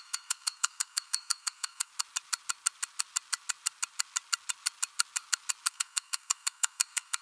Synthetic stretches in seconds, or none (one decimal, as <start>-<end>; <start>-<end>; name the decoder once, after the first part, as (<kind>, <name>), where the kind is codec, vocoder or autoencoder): 0.0-1.9 (codec, SNAC); 5.7-7.2